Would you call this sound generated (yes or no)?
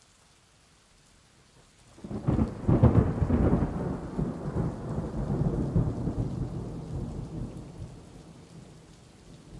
no